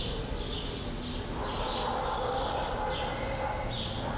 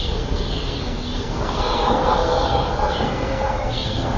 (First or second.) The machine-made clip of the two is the second